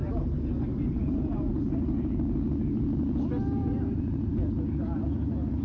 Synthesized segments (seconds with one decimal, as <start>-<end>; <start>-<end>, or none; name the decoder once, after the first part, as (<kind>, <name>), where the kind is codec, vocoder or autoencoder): 0.7-2.1 (vocoder, BigVGAN v2); 3.6-4.3